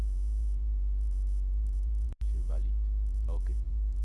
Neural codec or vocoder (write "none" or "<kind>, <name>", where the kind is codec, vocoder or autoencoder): vocoder, BigVGAN v2